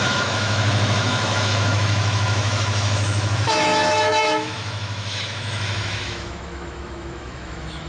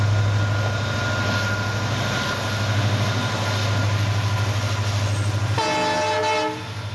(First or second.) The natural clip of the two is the second